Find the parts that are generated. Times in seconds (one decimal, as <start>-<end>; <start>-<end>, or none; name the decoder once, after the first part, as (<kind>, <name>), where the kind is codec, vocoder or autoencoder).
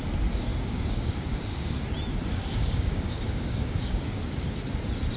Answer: 0.5-1.8 (codec, DAC); 2.3-4.2